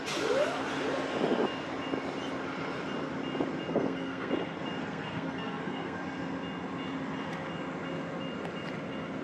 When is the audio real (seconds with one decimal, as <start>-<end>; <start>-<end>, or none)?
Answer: 0.0-3.7; 4.3-4.8; 6.0-9.2